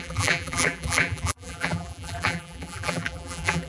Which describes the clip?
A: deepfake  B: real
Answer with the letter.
A